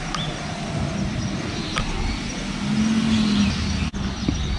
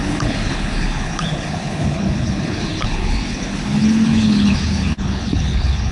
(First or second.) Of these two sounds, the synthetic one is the second